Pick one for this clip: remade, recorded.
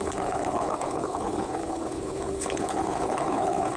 remade